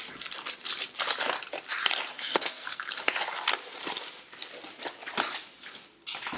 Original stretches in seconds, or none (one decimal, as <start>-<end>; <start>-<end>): 0.0-2.1; 2.8-6.4